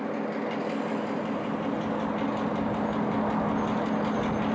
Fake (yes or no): no